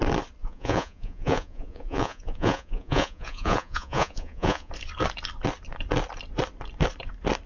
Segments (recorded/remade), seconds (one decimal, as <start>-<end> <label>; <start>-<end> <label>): 0.0-0.4 recorded; 0.4-4.7 remade; 4.7-7.5 recorded